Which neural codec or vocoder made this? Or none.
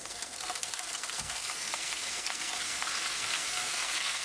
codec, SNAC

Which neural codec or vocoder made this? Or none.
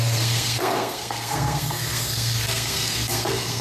codec, SNAC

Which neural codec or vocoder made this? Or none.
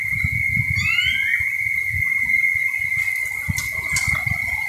none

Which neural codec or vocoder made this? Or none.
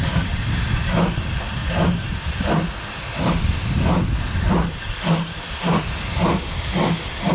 none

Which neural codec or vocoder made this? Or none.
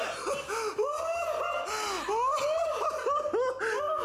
none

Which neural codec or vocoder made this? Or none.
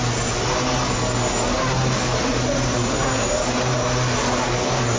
none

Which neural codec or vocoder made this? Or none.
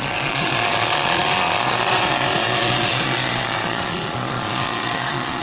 vocoder, Vocos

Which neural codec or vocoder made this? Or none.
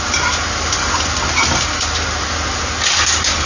none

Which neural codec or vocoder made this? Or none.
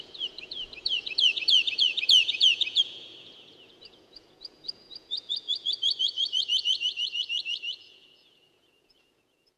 vocoder, Vocos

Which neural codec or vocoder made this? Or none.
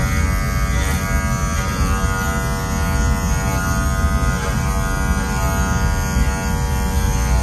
none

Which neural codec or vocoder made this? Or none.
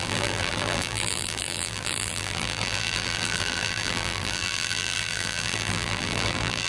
vocoder, BigVGAN v2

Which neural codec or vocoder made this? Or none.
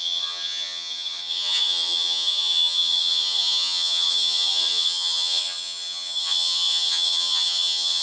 vocoder, HiFi-GAN